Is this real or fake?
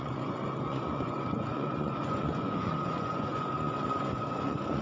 fake